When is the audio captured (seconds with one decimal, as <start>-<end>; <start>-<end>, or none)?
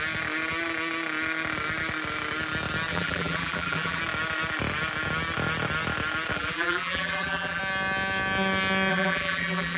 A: 0.0-2.9; 4.0-6.3; 7.6-8.9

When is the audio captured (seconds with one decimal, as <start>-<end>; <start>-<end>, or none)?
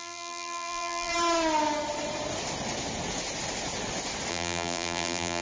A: 1.1-4.3